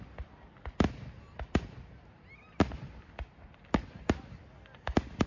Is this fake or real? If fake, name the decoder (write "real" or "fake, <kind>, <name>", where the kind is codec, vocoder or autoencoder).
real